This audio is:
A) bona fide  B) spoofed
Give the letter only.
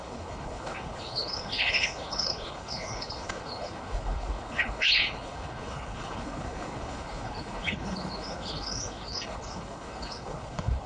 B